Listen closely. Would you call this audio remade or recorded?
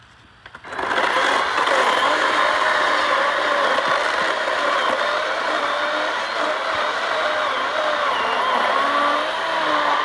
recorded